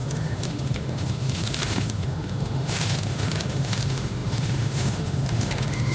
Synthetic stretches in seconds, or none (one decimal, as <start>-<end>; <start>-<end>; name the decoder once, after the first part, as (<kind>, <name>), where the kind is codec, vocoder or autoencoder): 0.0-5.9 (autoencoder, DAC-VAE)